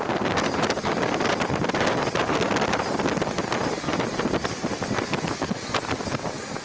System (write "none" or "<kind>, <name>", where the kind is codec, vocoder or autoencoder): none